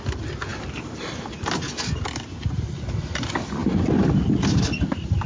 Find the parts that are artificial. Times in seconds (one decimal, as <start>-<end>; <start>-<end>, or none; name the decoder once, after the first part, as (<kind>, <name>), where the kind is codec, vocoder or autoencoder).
none